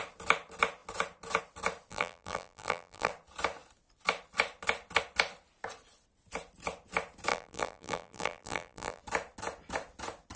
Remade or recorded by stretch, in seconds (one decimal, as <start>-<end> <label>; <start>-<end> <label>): 0.0-1.9 recorded; 1.9-3.1 remade; 3.1-7.3 recorded; 7.3-9.0 remade; 9.0-10.4 recorded